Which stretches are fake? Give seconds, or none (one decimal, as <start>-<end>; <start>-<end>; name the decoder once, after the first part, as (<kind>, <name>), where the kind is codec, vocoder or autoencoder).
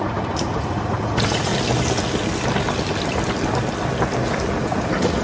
0.0-1.5 (vocoder, Vocos); 4.6-5.2